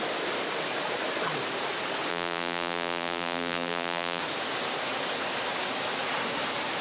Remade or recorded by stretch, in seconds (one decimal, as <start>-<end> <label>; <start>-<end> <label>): 0.0-2.1 recorded; 2.1-4.2 remade; 4.2-6.8 recorded

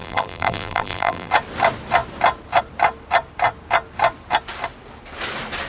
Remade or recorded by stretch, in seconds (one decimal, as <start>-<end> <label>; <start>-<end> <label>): 0.0-1.3 remade; 1.3-5.7 recorded